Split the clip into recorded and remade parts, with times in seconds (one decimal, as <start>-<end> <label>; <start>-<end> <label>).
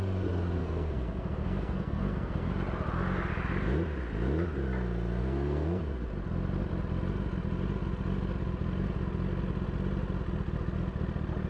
0.0-0.6 recorded; 0.6-2.5 remade; 2.5-5.2 recorded; 5.2-5.8 remade; 5.8-11.5 recorded